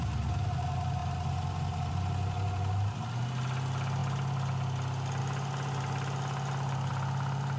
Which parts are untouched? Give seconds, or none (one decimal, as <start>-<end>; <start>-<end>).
0.0-7.6